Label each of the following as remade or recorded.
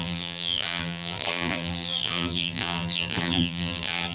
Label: remade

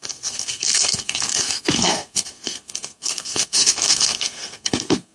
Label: remade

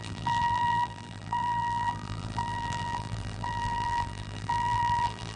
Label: remade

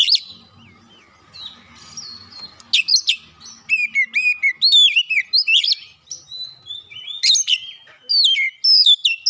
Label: recorded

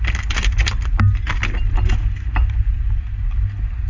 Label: recorded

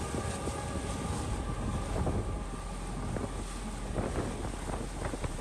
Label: recorded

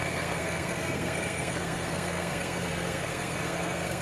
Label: remade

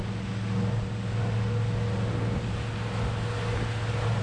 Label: recorded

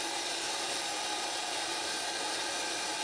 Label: recorded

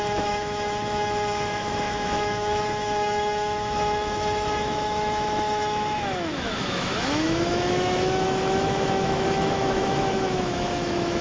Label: remade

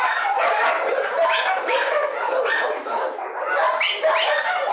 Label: recorded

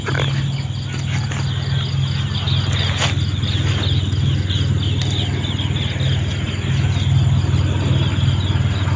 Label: recorded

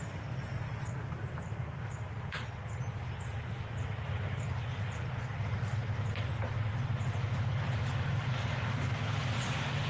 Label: recorded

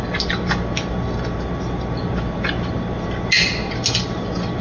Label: recorded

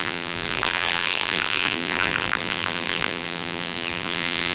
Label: remade